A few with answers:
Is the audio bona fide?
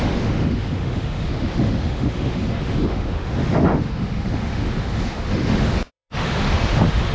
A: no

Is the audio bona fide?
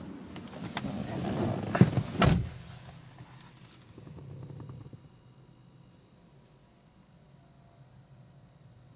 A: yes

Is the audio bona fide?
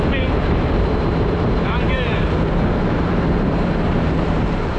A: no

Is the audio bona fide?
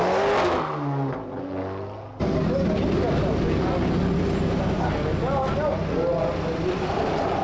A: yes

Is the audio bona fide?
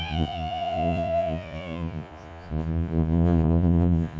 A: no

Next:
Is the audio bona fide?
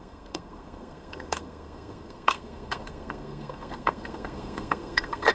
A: no